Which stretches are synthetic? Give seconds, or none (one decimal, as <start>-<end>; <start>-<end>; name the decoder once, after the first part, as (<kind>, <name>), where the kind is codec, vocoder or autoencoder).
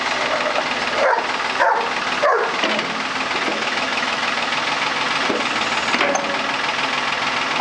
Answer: 3.5-4.3 (autoencoder, DAC-VAE)